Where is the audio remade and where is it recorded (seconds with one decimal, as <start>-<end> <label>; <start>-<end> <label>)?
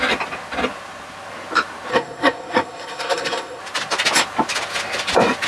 0.0-1.9 recorded; 1.9-3.6 remade; 3.6-5.5 recorded